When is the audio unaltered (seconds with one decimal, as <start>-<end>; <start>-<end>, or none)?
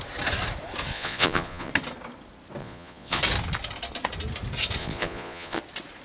0.0-0.9; 1.7-2.6; 3.2-4.8; 5.6-6.0